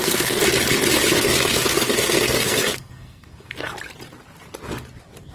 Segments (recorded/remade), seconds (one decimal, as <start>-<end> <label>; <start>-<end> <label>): 0.0-0.4 remade; 0.4-1.2 recorded; 1.2-3.7 remade; 3.7-5.3 recorded